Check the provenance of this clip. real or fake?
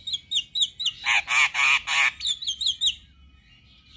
real